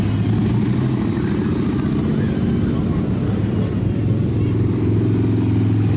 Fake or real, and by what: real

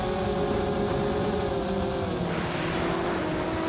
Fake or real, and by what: real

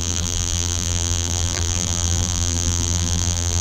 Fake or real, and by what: fake, vocoder, BigVGAN v2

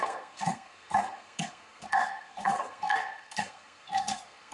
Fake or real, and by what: fake, codec, SNAC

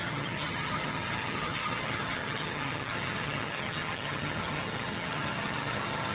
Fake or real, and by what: fake, vocoder, HiFi-GAN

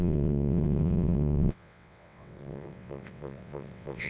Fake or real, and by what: fake, vocoder, WaveNeXt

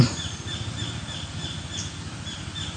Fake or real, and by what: real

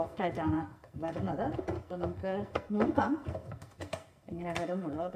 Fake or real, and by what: fake, codec, SNAC